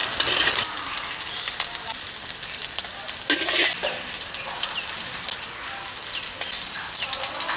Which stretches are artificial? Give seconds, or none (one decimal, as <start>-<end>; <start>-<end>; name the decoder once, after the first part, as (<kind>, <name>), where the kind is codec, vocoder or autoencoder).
none